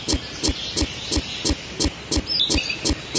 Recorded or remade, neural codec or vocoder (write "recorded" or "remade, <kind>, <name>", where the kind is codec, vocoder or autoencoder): recorded